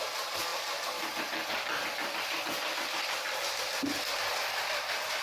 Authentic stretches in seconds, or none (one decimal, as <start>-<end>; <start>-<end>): 0.0-0.5; 3.6-5.2